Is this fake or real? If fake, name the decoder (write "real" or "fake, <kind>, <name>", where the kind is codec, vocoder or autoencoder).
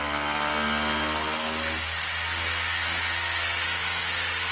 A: real